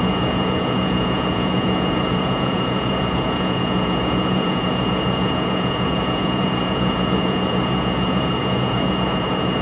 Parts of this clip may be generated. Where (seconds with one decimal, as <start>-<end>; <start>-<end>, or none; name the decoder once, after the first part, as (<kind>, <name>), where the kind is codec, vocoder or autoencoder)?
0.0-9.6 (vocoder, Vocos)